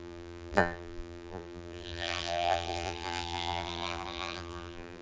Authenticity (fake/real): fake